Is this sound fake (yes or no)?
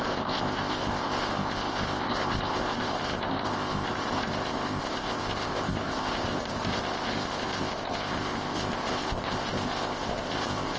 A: yes